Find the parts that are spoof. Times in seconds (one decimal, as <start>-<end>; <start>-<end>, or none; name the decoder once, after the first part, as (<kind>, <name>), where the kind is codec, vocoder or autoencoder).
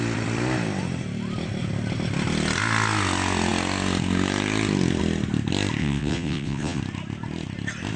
5.8-6.8 (vocoder, WaveNeXt)